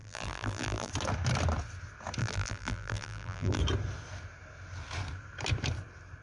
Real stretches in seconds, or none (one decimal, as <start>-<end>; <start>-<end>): 0.9-2.2; 3.6-6.2